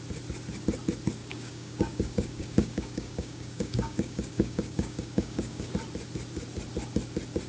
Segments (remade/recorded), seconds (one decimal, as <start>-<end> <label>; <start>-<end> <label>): 0.0-1.2 recorded; 1.2-5.7 remade; 5.7-7.5 recorded